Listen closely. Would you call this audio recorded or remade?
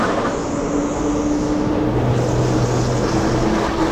recorded